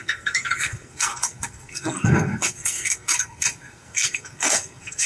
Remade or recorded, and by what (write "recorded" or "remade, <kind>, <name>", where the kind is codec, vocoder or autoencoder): remade, codec, SNAC